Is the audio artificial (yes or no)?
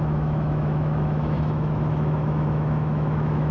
yes